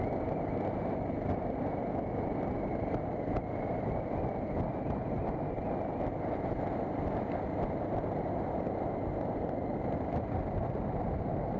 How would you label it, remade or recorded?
recorded